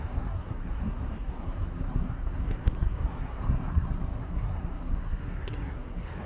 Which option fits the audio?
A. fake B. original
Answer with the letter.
A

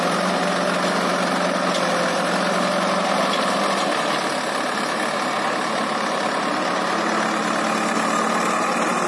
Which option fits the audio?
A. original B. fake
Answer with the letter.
A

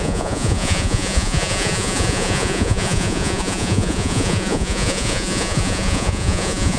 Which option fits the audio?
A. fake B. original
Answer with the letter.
A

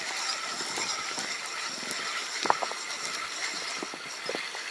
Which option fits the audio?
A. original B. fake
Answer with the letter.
A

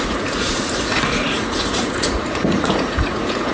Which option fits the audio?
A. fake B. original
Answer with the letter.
A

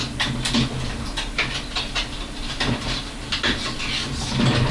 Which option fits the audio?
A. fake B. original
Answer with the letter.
B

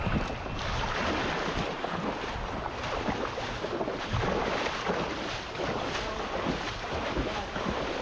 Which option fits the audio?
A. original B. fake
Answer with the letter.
A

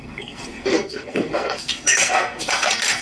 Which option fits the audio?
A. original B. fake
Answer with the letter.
B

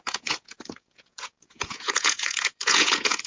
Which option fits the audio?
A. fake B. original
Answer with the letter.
A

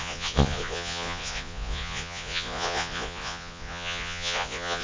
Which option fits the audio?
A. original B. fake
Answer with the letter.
B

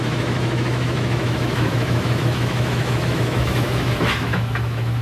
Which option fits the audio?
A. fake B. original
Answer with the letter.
A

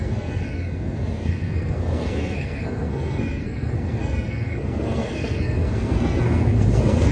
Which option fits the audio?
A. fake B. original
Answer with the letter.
A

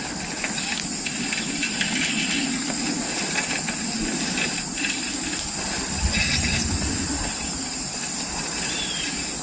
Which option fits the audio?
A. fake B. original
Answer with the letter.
B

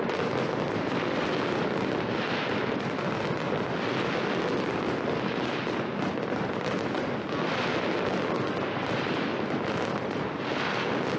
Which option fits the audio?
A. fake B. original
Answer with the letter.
B